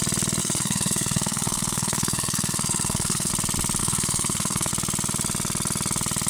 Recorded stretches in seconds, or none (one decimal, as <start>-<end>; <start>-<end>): 0.0-0.4; 3.3-3.8; 4.7-6.3